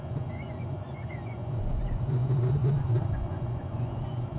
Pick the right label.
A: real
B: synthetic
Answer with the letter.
B